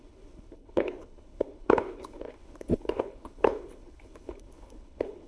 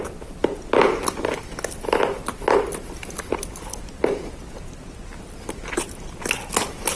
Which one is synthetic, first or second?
first